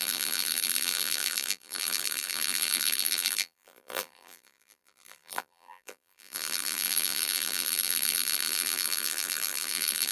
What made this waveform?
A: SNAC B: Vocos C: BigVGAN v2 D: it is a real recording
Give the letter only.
C